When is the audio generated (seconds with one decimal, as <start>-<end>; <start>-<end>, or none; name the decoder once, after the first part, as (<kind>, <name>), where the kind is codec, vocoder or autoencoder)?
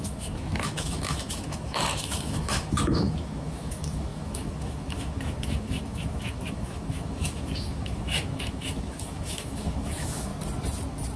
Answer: 0.0-10.3 (autoencoder, DAC-VAE)